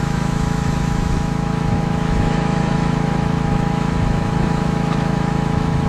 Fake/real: fake